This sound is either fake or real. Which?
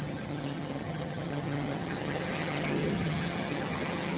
fake